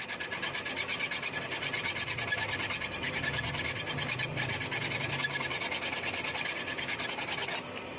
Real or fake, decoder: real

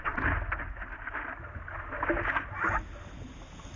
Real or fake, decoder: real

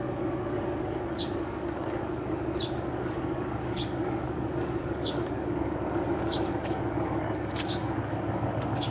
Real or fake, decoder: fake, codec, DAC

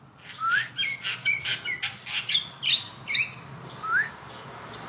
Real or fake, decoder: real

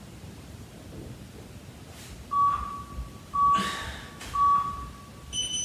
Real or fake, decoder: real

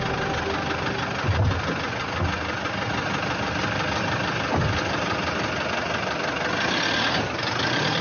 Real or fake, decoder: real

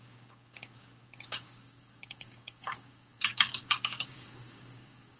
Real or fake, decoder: fake, codec, DAC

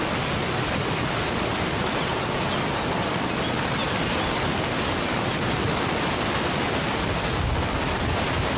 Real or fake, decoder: real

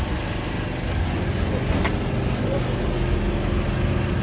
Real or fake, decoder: real